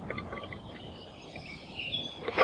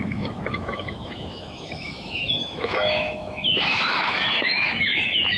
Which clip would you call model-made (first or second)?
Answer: second